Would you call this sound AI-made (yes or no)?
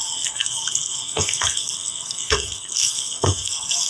yes